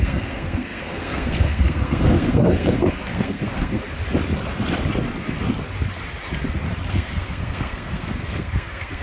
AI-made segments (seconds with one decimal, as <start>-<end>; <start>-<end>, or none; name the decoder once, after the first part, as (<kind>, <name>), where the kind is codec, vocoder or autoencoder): 0.0-3.8 (codec, SNAC); 6.9-9.0